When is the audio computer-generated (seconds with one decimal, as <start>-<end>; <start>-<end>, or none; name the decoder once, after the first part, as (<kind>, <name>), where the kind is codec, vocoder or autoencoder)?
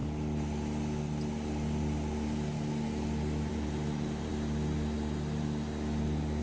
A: 3.5-4.3 (vocoder, BigVGAN v2)